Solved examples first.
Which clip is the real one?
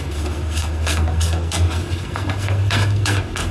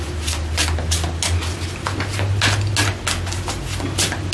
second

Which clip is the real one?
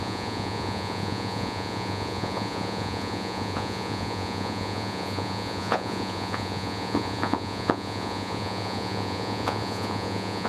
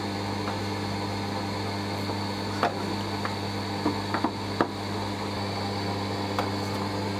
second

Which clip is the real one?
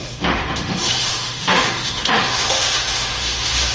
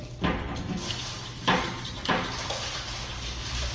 second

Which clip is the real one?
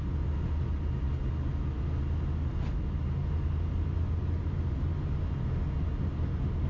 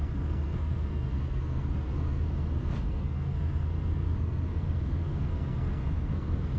first